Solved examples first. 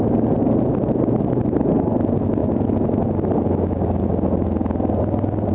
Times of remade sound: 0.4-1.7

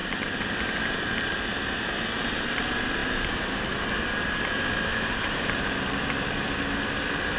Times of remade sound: 0.0-1.3; 4.9-5.7

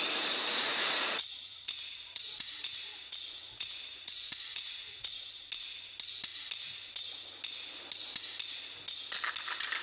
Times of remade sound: 0.5-5.1

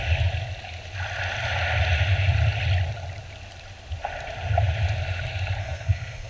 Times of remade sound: 5.6-6.3

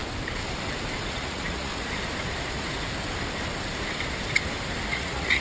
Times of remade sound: 1.1-1.7; 4.9-5.4

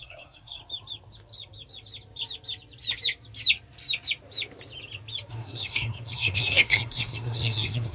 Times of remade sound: 0.0-0.6; 5.3-7.9